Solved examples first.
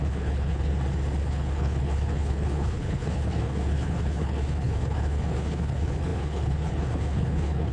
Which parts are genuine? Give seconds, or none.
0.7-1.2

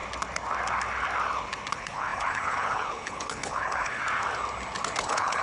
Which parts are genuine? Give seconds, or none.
0.0-1.7; 4.0-5.0

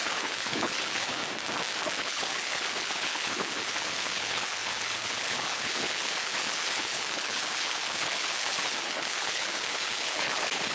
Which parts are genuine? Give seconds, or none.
1.2-2.0